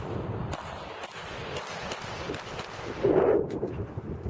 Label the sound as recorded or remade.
recorded